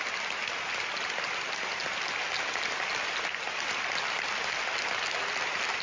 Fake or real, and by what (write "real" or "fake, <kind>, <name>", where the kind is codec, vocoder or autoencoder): real